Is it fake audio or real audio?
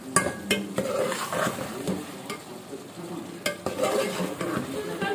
real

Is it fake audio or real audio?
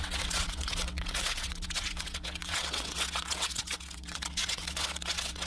fake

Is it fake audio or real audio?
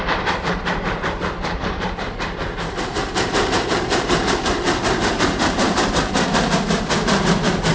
fake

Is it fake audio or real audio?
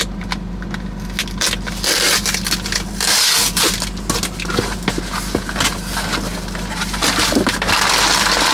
real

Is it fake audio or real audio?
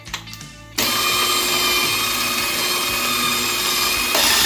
real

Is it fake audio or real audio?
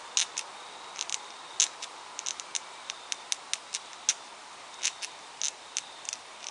real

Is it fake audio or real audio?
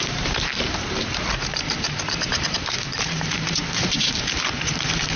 fake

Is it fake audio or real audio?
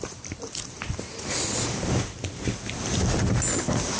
real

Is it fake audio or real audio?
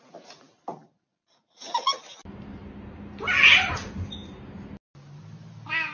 real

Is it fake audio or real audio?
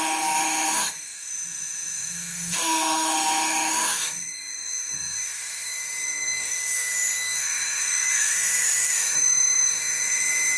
fake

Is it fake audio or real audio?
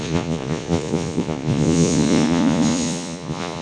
fake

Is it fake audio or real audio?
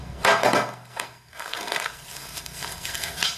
fake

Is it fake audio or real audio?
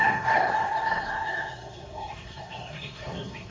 fake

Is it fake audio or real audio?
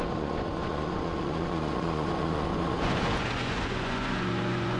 fake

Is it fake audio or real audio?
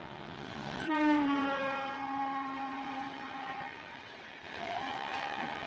fake